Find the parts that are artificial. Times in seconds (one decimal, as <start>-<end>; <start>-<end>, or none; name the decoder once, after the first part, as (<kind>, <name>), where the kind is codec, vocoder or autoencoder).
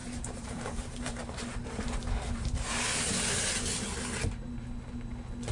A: 0.0-3.3 (vocoder, BigVGAN v2)